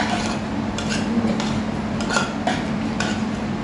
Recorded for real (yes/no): yes